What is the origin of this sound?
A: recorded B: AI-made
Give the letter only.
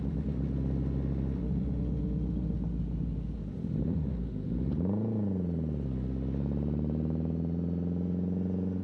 A